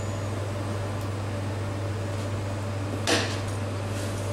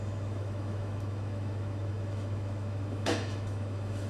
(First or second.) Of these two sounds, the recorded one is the first